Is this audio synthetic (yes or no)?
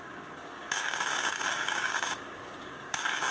yes